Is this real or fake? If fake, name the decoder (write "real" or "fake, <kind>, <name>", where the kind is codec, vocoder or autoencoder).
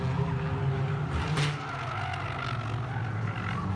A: real